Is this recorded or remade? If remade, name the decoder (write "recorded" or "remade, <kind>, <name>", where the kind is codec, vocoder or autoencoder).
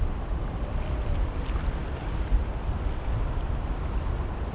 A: recorded